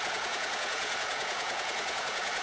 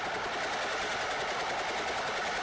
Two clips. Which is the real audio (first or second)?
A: second